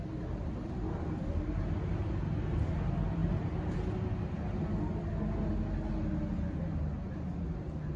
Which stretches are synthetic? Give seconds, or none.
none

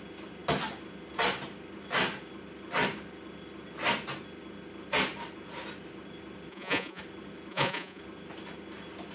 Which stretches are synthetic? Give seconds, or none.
6.5-7.0 (vocoder, Vocos); 7.5-8.0

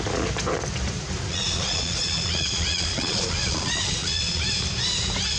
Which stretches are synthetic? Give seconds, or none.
1.3-4.4 (vocoder, Vocos)

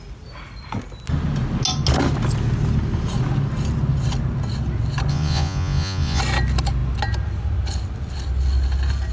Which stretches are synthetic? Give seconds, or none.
5.1-6.2 (vocoder, Vocos)

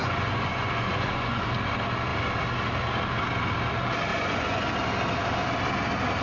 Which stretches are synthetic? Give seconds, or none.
0.0-1.5 (vocoder, Vocos); 4.1-4.7